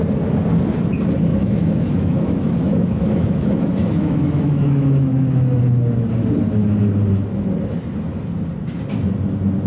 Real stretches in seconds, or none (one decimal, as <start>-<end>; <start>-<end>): 0.0-1.3; 5.6-9.7